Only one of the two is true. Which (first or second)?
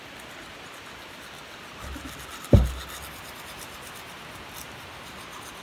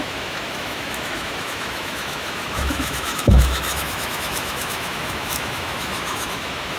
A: first